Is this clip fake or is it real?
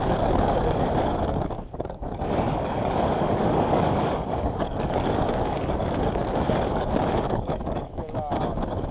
fake